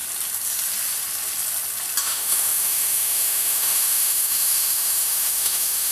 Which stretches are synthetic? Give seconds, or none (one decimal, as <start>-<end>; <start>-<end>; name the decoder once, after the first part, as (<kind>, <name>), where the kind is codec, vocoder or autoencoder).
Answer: 2.0-5.9 (autoencoder, DAC-VAE)